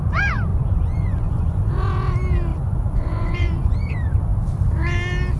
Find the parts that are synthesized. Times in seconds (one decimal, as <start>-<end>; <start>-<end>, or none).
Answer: 0.5-1.7; 2.5-3.9